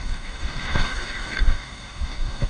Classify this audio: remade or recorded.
remade